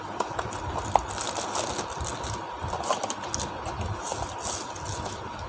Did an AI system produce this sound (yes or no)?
no